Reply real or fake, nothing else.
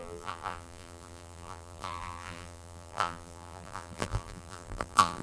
fake